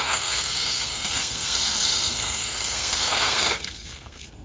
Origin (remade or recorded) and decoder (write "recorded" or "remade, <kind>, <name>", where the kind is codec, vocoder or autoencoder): remade, codec, SNAC